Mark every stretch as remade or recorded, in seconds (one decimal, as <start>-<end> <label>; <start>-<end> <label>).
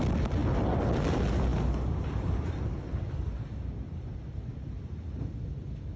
0.0-6.0 recorded